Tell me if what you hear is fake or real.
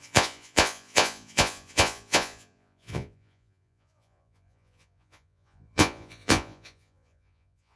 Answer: fake